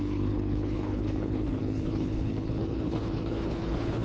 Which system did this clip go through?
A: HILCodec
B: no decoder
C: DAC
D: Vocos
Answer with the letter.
A